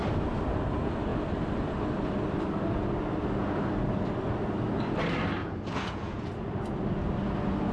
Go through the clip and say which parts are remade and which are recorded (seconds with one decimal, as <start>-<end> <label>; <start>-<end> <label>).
0.0-5.4 recorded; 5.4-6.3 remade; 6.3-7.7 recorded

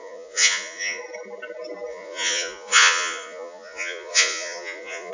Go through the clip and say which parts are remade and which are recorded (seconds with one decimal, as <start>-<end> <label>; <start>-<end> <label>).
0.0-1.0 remade; 1.0-1.9 recorded; 1.9-5.1 remade